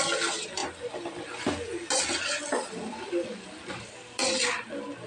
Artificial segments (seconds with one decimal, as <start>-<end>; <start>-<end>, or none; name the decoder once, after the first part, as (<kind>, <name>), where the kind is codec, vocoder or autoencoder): 0.0-0.6 (vocoder, BigVGAN v2); 3.7-4.2